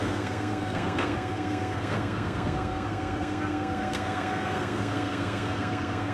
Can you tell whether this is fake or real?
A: fake